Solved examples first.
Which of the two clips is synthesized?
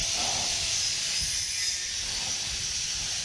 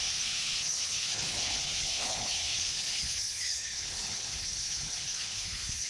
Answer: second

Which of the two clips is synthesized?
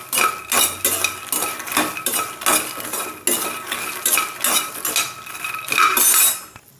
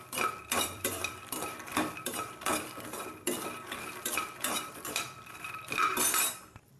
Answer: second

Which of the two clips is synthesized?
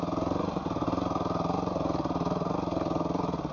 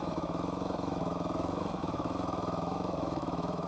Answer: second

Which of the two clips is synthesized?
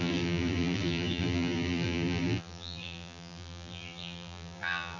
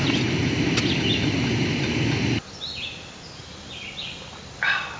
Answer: first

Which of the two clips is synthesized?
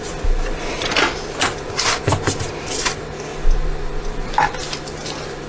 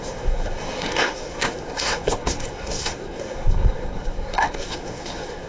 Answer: second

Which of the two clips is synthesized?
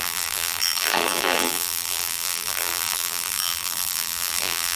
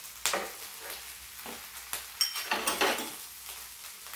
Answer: first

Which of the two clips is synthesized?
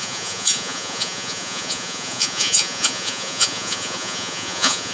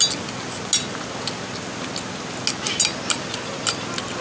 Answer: first